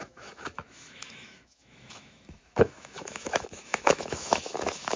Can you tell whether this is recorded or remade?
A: remade